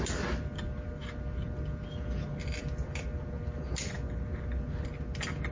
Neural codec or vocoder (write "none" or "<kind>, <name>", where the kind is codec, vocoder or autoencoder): none